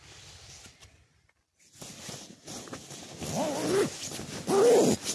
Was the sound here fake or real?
real